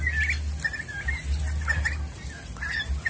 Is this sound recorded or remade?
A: recorded